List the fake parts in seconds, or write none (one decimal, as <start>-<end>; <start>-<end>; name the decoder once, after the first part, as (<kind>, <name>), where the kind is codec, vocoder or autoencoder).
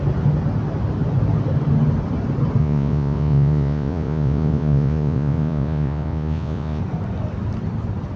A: 2.6-6.8 (vocoder, Vocos)